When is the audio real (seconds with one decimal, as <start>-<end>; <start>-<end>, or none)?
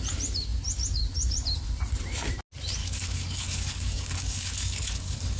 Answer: 0.0-2.8